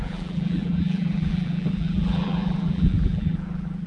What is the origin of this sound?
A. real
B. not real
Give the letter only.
B